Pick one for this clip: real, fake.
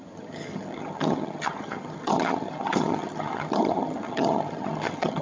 fake